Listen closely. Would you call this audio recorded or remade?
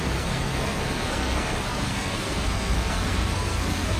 remade